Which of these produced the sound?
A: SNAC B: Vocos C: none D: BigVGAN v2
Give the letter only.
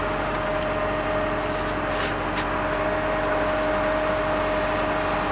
C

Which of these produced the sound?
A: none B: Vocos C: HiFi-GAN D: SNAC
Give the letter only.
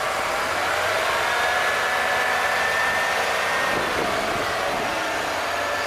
A